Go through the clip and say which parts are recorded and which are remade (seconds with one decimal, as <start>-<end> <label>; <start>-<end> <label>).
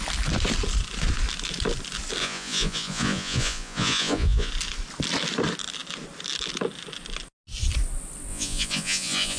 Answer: 0.0-2.2 recorded; 2.2-4.5 remade; 4.5-8.3 recorded; 8.3-9.4 remade